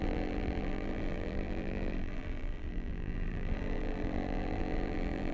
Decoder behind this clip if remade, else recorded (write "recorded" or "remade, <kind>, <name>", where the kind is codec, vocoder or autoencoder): remade, vocoder, BigVGAN v2